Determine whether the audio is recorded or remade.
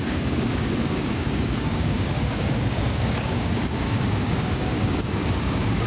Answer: remade